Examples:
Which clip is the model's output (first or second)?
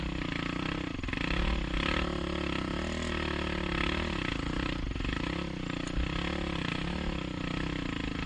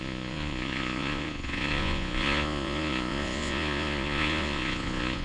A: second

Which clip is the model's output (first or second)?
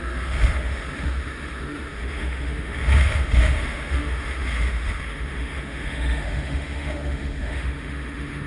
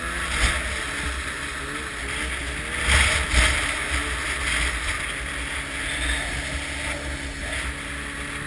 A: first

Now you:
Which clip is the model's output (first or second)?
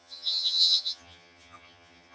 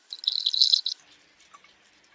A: first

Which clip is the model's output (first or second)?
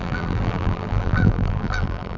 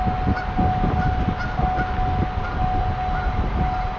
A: first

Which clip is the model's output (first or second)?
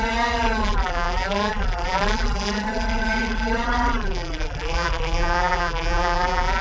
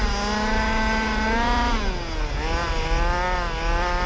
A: first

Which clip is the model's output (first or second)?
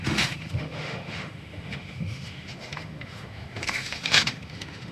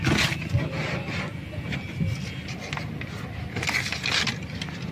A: first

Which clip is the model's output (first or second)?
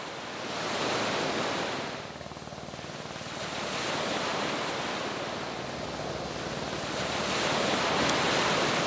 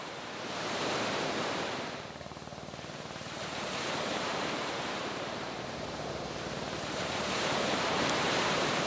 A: second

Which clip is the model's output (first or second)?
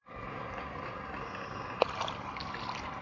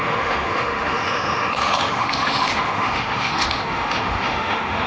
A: second